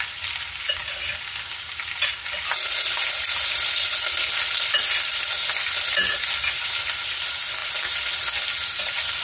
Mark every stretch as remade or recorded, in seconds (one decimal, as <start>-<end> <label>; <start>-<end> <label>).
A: 0.0-9.2 recorded